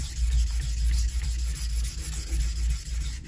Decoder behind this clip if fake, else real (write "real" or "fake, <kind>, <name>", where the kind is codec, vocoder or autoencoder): real